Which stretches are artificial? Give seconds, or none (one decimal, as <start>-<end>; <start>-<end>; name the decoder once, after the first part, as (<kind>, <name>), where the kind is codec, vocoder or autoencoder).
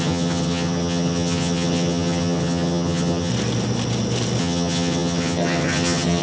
0.0-3.3 (vocoder, HiFi-GAN); 4.4-6.2